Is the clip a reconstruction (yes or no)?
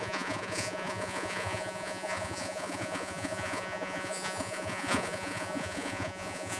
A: yes